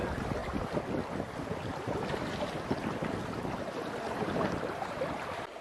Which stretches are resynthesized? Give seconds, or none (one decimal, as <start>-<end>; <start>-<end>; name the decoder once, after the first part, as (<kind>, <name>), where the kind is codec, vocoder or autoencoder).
none